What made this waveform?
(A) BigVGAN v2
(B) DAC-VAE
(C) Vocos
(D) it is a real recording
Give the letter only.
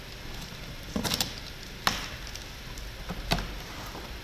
D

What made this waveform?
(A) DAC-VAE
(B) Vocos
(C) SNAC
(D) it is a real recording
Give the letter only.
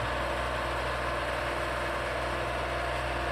D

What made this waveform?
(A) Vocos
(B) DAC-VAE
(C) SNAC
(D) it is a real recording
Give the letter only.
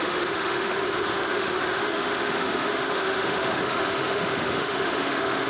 B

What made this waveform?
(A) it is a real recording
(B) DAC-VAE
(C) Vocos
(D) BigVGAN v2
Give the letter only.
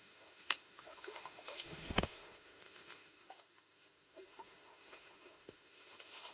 B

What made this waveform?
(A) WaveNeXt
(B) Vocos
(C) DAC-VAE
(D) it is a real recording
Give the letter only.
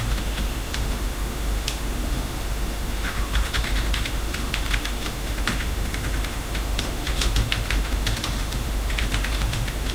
C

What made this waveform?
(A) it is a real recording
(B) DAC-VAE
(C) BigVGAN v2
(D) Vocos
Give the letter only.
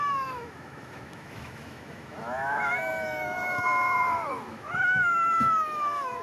B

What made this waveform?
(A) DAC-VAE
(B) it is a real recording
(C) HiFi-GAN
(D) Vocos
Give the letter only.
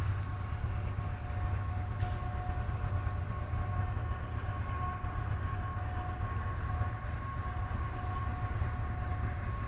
B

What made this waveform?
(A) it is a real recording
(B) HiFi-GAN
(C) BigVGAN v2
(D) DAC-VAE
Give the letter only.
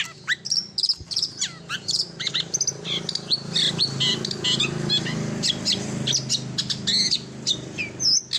A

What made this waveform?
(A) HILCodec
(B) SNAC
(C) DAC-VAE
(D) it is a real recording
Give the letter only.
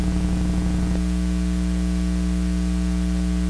D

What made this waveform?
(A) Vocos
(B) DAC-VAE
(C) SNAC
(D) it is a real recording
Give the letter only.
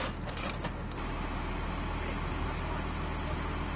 D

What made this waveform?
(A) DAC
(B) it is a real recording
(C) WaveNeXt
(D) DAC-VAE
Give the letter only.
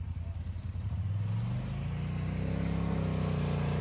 B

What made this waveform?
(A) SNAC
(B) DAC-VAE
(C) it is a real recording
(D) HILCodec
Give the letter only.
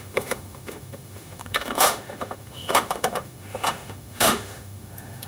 B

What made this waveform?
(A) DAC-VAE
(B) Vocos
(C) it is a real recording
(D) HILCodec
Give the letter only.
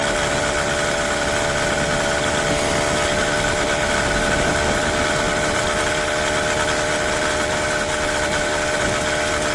C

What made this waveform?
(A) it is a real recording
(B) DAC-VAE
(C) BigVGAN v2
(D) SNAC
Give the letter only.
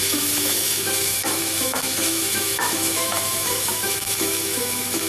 B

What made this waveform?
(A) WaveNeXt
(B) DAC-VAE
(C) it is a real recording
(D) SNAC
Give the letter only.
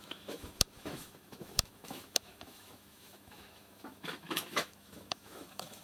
B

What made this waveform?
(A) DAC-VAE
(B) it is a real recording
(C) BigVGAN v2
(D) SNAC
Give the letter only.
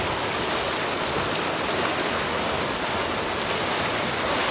B